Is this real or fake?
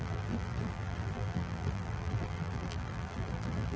fake